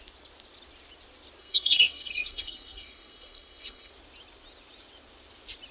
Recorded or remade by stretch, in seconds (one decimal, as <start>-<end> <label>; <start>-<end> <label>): 0.0-1.4 recorded; 1.4-3.9 remade; 3.9-5.7 recorded